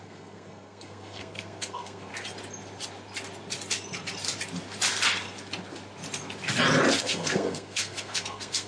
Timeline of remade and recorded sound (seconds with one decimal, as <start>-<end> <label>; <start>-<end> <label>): 0.0-2.1 remade; 2.1-7.0 recorded; 7.0-8.7 remade